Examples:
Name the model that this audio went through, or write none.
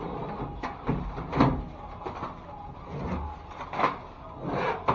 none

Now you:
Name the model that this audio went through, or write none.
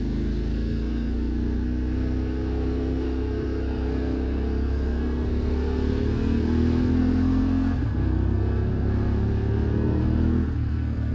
codec, SNAC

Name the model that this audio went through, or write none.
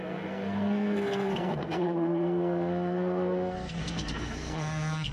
codec, SNAC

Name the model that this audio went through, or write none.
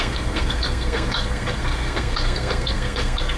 codec, SNAC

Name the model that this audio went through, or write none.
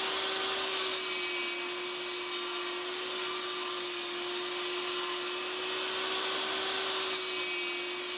none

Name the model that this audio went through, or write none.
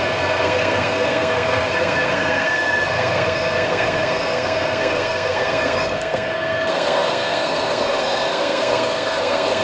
codec, SNAC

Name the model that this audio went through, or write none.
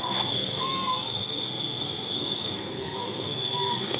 codec, SNAC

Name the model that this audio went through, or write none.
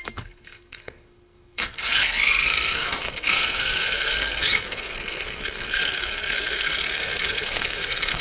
codec, SNAC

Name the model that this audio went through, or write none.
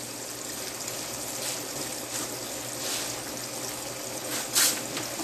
none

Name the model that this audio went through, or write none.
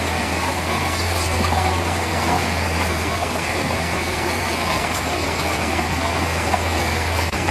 codec, SNAC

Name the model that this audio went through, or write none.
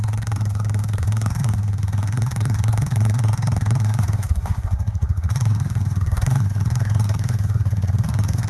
codec, SNAC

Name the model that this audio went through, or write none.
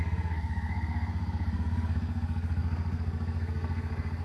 codec, SNAC